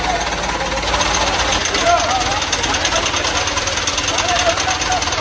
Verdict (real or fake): real